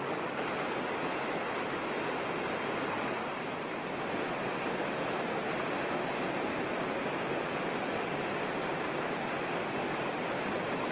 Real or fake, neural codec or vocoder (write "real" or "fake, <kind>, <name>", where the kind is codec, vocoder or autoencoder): real